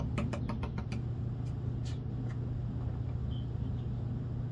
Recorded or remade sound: recorded